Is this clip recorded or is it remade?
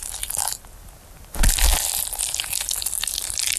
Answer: recorded